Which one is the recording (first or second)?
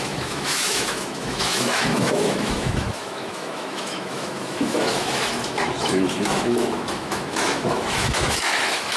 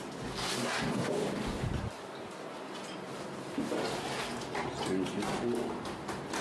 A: second